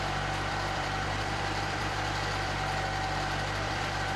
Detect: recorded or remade remade